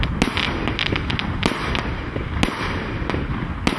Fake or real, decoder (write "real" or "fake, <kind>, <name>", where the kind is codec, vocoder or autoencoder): real